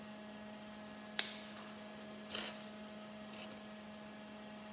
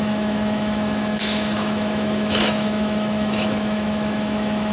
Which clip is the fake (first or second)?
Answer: second